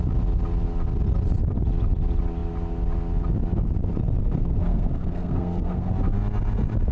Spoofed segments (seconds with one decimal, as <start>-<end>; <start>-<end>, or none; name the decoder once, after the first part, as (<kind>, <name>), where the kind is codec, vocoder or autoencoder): 4.2-5.9 (codec, SNAC)

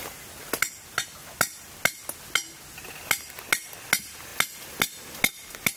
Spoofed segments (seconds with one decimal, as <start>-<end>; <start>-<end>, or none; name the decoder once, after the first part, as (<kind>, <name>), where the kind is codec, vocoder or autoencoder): none